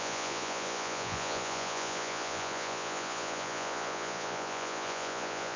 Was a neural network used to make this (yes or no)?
yes